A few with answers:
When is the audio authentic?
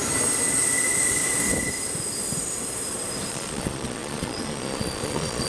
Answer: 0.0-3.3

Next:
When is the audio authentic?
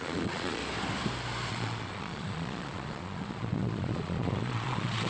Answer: 0.6-1.5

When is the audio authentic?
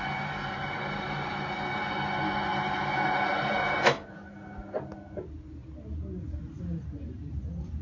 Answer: 0.0-7.8